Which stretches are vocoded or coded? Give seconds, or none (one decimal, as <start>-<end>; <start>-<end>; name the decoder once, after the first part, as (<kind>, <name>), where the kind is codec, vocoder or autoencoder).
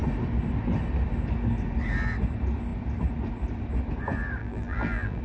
4.4-5.2 (vocoder, BigVGAN v2)